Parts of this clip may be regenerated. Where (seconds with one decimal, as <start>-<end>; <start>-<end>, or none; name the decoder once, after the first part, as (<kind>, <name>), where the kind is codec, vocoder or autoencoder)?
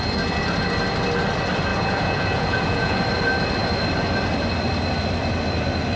1.7-3.0 (vocoder, Vocos)